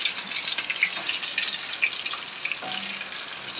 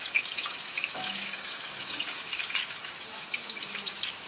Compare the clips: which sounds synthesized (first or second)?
second